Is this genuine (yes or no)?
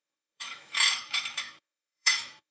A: no